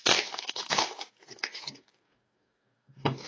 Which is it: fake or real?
fake